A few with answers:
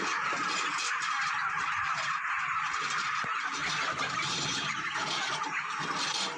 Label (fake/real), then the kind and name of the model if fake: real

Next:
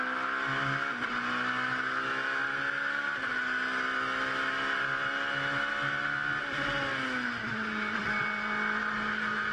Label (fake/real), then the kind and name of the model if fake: real